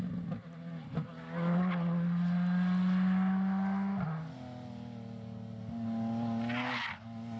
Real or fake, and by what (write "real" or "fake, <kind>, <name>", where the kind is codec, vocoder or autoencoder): real